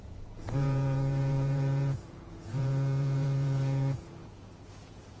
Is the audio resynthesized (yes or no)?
yes